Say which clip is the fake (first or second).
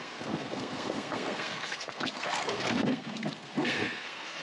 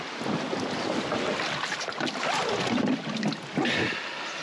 first